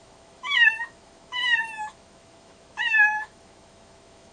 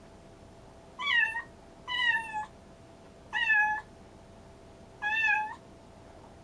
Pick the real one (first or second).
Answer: second